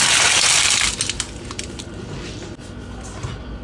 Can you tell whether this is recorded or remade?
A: recorded